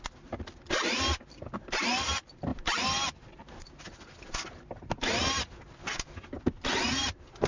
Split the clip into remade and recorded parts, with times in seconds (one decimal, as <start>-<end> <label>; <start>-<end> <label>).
0.0-7.5 recorded